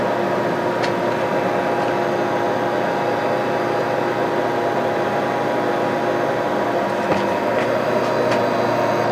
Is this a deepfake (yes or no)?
no